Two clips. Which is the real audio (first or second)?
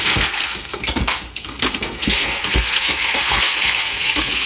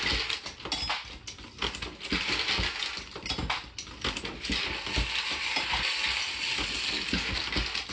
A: second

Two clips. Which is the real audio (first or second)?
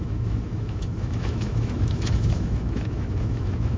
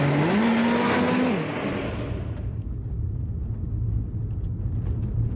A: second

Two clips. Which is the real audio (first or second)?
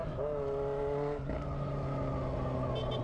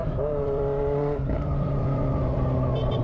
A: first